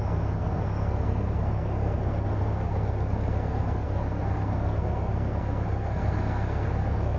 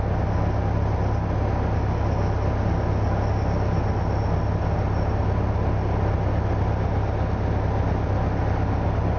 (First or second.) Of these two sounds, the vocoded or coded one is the first